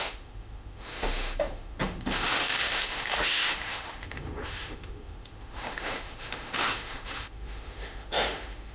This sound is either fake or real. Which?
fake